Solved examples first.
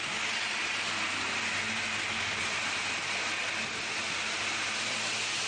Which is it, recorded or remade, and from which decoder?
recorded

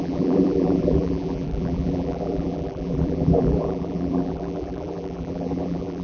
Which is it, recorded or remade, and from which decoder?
remade, vocoder, BigVGAN v2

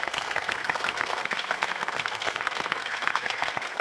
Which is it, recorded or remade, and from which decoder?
remade, codec, SNAC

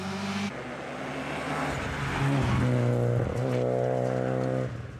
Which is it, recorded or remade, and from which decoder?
recorded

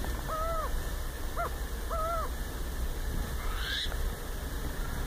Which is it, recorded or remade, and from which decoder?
recorded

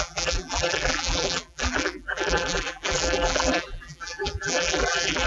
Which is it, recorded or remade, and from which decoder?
remade, vocoder, BigVGAN v2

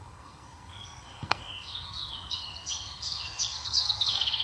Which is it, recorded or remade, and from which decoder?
remade, codec, SNAC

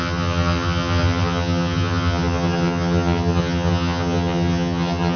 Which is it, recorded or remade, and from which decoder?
remade, vocoder, HiFi-GAN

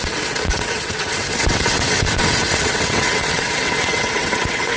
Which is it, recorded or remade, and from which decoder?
remade, vocoder, WaveNeXt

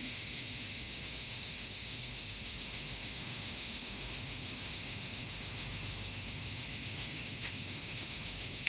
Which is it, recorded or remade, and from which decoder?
remade, autoencoder, DAC-VAE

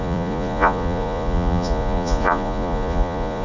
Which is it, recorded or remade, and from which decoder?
remade, vocoder, Vocos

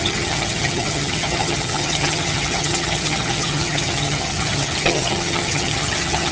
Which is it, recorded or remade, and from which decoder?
remade, vocoder, HiFi-GAN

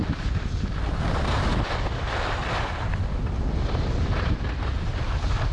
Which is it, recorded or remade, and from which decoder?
recorded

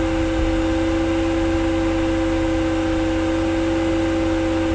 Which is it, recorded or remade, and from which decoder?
recorded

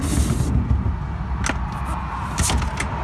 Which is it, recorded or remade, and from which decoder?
recorded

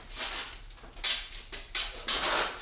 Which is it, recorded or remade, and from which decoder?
recorded